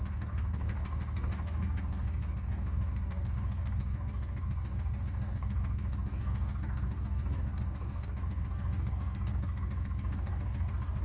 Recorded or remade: remade